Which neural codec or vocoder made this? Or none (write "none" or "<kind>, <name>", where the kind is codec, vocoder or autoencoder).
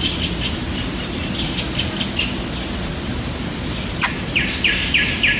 none